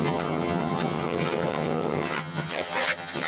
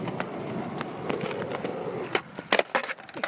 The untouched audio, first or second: second